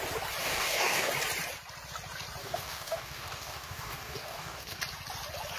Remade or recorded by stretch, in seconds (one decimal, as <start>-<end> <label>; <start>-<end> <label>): 0.0-0.4 recorded; 0.4-1.1 remade; 1.1-2.4 recorded; 2.4-4.8 remade; 4.8-5.6 recorded